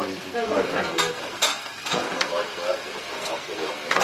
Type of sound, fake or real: fake